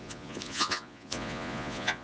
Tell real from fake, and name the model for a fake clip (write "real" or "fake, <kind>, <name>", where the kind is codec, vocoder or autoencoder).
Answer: fake, vocoder, Vocos